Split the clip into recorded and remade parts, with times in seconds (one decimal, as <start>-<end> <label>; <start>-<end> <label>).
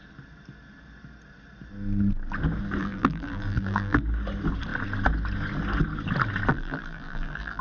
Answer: 0.0-2.8 recorded; 2.8-4.0 remade; 4.0-6.5 recorded; 6.5-7.6 remade